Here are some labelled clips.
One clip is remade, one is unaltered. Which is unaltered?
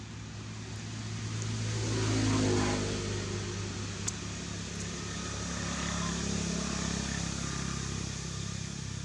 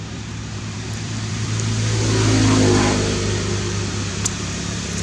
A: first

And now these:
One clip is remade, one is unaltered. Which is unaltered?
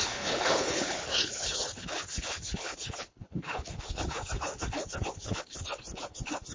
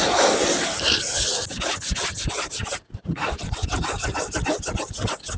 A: second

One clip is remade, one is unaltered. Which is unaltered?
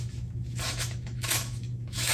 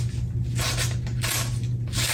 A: second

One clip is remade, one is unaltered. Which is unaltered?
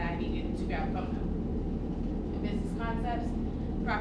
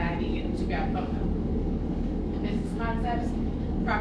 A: first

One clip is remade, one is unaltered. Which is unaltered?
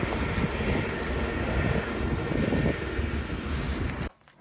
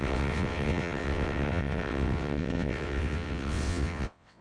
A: first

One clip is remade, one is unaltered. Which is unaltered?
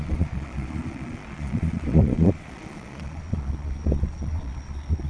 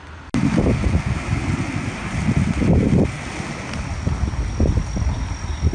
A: second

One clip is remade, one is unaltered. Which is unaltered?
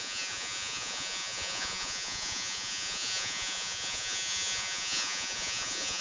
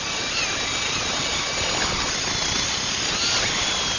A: second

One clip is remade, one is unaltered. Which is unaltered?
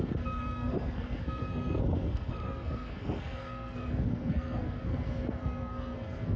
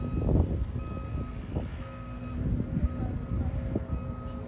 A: second